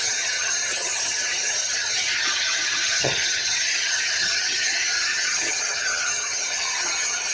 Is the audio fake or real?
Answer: fake